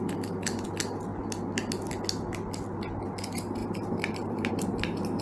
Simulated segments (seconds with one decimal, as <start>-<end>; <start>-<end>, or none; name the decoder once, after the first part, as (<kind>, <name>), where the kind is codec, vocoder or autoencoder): 3.6-4.5 (vocoder, BigVGAN v2)